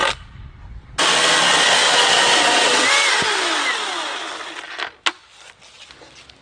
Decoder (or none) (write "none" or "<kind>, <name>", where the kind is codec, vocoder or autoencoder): none